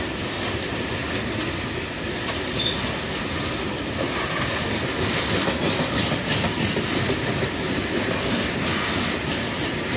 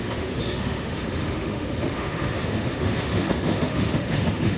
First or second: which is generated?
second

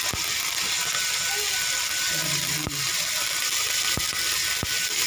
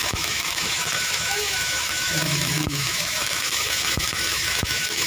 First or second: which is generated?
second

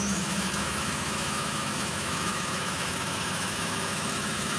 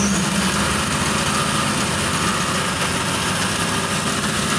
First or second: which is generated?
first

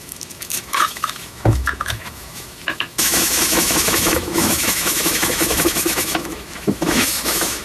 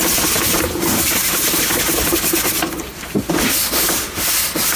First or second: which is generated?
first